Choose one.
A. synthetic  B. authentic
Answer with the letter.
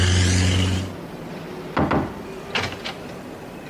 B